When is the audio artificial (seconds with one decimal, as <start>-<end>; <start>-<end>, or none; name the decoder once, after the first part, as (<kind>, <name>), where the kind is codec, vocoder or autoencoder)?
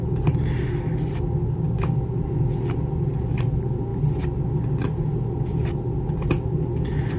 none